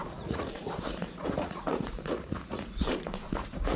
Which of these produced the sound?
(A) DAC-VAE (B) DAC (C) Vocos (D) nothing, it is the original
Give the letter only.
C